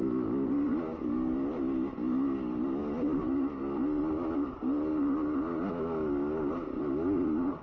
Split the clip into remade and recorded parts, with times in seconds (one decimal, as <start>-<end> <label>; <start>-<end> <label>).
0.0-7.6 recorded